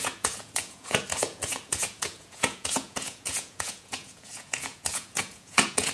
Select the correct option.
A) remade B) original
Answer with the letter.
A